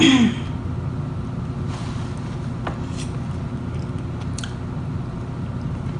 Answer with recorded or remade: recorded